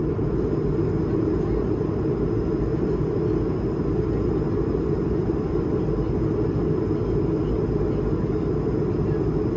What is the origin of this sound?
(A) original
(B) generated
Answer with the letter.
A